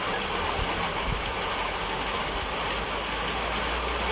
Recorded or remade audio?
recorded